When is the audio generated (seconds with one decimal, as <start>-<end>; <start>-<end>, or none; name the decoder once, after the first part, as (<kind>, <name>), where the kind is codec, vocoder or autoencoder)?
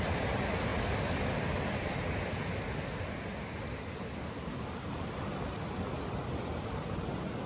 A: none